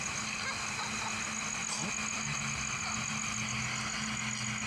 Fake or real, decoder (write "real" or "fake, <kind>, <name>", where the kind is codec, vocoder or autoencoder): real